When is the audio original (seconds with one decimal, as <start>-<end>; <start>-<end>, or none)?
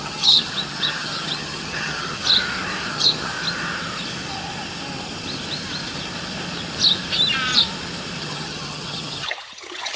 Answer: 2.2-2.9; 3.3-8.2